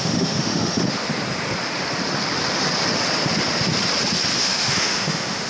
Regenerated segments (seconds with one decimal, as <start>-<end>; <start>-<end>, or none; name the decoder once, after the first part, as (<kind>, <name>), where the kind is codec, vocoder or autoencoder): 0.0-1.1 (autoencoder, DAC-VAE); 4.4-5.5

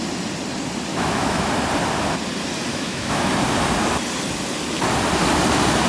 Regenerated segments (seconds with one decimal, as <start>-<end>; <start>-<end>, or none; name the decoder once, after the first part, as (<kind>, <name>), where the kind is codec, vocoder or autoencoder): 0.9-1.5 (autoencoder, DAC-VAE); 2.7-3.3

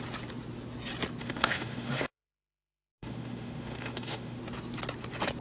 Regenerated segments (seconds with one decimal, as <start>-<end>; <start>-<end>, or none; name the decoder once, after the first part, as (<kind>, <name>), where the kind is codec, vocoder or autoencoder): 1.2-4.4 (autoencoder, DAC-VAE)